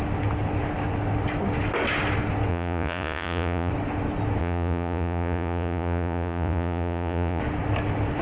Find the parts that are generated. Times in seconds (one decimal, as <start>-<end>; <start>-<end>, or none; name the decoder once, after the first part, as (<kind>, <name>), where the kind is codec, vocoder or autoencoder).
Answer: 2.5-3.7 (vocoder, Vocos); 4.4-7.4